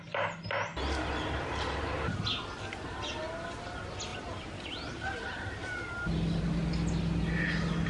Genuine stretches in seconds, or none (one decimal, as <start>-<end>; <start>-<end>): 0.0-4.1; 6.4-7.9